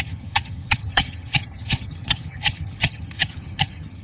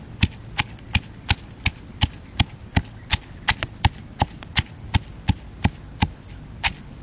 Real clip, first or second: second